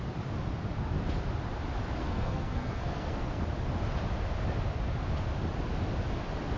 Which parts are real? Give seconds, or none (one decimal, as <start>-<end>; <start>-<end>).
0.0-2.0; 3.4-6.6